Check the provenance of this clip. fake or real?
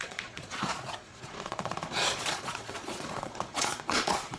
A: fake